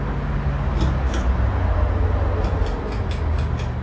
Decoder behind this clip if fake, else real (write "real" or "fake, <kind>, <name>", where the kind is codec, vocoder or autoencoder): real